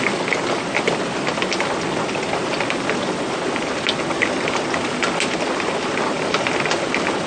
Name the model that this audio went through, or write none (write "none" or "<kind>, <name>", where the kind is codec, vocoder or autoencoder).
none